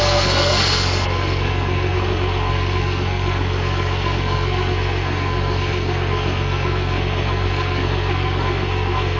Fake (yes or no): yes